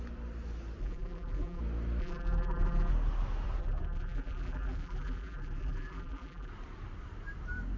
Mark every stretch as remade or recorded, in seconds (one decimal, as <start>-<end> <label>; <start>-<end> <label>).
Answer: 0.0-0.8 recorded; 0.8-1.6 remade; 1.6-2.0 recorded; 2.0-2.9 remade; 2.9-3.6 recorded; 3.6-6.5 remade; 6.5-7.8 recorded